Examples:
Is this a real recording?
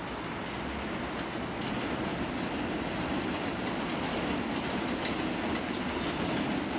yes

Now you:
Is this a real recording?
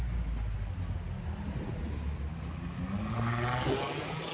yes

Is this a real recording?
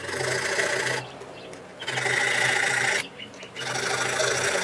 yes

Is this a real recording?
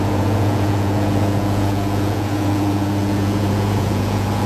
no